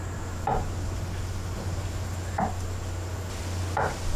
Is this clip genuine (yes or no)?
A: yes